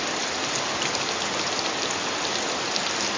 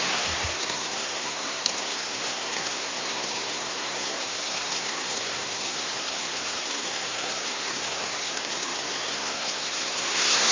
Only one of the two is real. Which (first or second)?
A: first